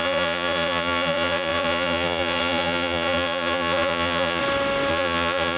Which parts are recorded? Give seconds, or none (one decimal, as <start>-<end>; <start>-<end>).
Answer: 4.4-4.9